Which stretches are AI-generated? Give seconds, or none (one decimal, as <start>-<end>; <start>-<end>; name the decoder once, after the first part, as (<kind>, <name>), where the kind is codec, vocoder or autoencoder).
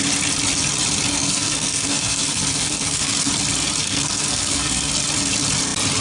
1.1-3.3 (codec, SNAC); 3.8-4.9